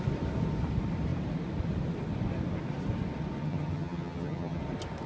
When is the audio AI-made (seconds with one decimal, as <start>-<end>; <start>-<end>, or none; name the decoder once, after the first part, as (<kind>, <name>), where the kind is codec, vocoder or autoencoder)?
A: 3.4-4.6 (vocoder, HiFi-GAN)